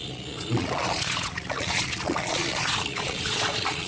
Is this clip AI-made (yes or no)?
yes